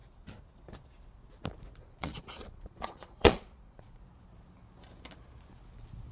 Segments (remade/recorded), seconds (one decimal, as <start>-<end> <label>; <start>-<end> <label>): 0.0-1.8 recorded; 1.8-4.0 remade; 4.0-6.1 recorded